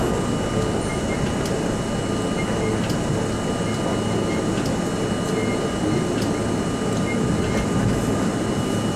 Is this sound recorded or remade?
recorded